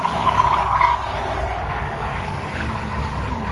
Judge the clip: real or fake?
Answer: fake